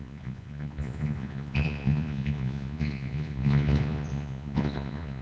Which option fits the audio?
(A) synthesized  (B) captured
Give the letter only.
A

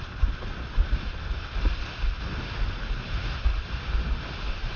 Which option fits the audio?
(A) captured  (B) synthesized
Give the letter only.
A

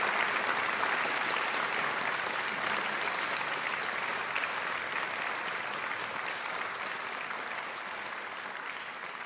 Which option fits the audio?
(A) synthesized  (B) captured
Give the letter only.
B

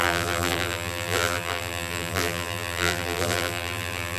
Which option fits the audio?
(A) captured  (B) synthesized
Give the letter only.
B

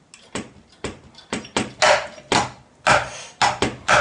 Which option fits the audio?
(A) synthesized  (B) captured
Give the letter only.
B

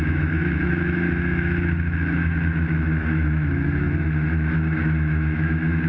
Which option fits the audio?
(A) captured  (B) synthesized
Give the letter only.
B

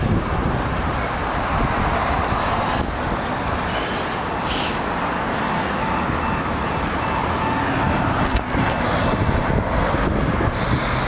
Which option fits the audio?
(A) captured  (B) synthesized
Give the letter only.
A